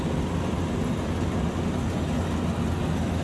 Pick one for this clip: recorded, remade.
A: recorded